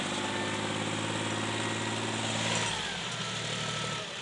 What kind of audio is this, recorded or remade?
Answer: recorded